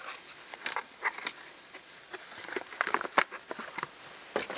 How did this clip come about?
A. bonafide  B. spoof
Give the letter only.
A